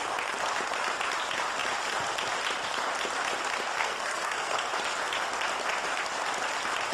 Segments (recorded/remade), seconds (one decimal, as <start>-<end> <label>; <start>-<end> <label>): 0.0-3.8 recorded; 3.8-4.7 remade; 4.7-6.9 recorded